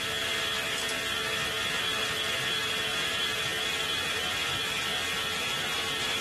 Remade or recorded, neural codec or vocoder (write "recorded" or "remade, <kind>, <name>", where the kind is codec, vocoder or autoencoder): recorded